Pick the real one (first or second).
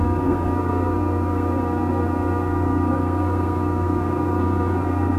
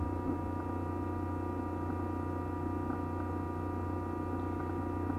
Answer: second